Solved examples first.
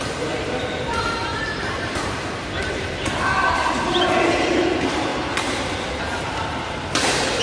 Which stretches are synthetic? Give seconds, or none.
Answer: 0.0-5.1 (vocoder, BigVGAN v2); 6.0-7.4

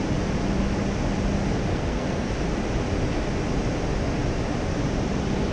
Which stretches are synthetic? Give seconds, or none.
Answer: 1.7-2.3 (codec, SNAC)

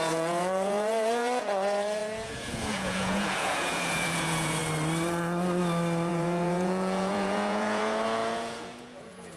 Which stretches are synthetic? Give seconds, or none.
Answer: 0.0-4.6 (vocoder, Vocos); 6.1-9.4